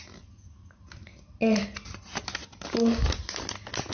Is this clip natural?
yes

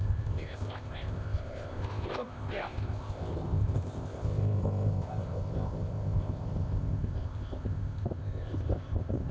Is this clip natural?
no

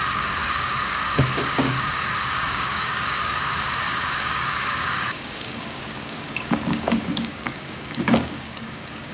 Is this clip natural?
no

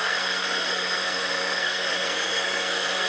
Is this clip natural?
no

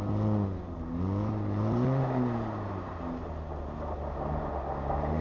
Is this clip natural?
yes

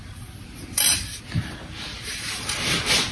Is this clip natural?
yes